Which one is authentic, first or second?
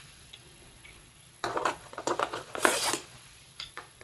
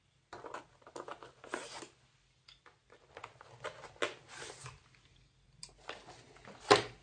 second